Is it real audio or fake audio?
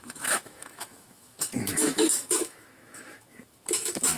fake